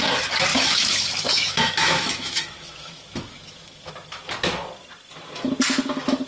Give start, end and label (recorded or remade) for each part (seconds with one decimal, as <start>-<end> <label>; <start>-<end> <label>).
0.0-0.5 recorded; 0.5-3.9 remade; 3.9-6.3 recorded